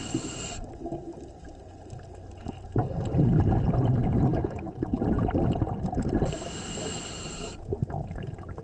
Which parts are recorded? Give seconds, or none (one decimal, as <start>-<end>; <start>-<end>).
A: 0.0-4.3; 4.9-8.6